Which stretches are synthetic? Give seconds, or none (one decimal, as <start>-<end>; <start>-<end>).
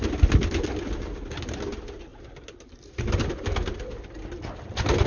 none